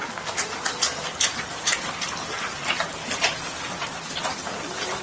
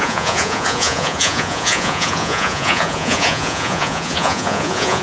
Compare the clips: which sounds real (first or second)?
first